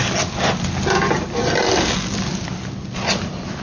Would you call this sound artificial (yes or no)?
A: no